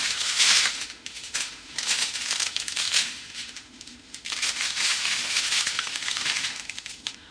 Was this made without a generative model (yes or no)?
no